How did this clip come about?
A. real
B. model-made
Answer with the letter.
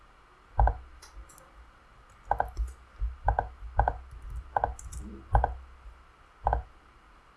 A